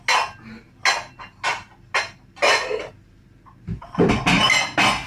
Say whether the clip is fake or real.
real